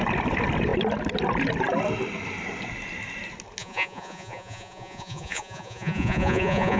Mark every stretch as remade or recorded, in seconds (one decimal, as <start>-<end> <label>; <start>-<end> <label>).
0.0-3.6 recorded; 3.6-6.8 remade

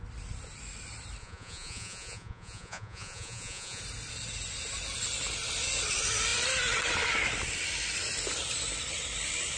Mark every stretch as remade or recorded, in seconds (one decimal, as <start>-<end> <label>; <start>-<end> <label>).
0.0-1.2 recorded; 1.2-3.8 remade; 3.8-9.6 recorded

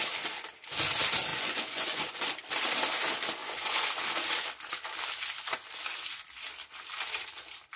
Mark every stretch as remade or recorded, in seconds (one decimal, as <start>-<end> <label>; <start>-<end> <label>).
0.0-1.3 recorded; 1.3-2.3 remade; 2.3-3.4 recorded; 3.4-3.9 remade; 3.9-7.8 recorded